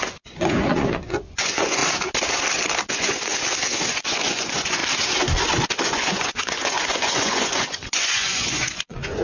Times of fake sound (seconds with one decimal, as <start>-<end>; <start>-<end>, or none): 0.0-1.8; 2.9-3.3; 3.9-4.8; 5.8-9.2

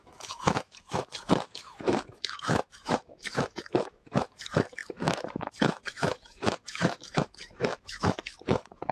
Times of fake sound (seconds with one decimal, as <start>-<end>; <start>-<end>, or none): 0.0-8.9

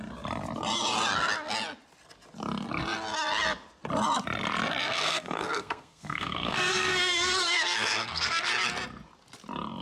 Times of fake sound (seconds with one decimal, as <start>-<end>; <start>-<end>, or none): 4.9-8.5

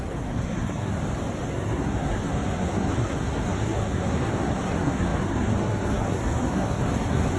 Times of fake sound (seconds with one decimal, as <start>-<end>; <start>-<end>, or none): 0.0-0.9; 1.5-7.4